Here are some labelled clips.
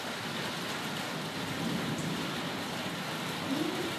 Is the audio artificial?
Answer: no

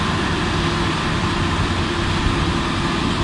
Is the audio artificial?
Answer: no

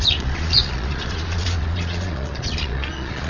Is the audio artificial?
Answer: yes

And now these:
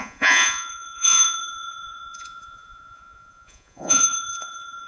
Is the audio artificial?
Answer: yes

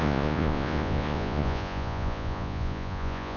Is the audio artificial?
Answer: yes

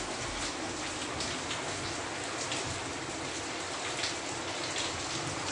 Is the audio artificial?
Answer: no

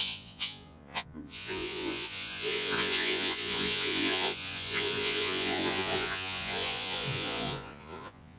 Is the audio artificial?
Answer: yes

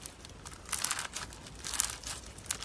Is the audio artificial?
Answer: no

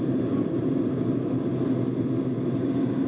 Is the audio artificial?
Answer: no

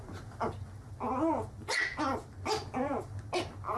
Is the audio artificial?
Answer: no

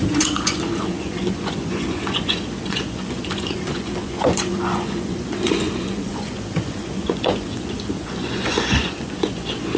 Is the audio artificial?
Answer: yes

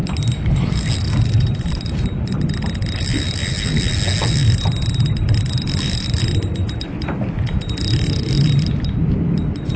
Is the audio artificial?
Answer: no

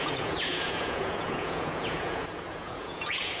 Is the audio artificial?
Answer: yes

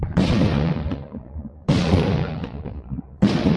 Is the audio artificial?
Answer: yes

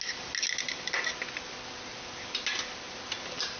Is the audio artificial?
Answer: no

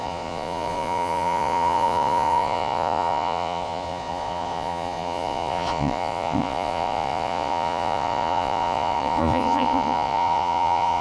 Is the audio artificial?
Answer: yes